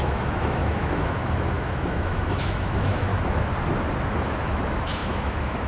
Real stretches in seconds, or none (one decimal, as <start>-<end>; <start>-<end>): 3.1-4.1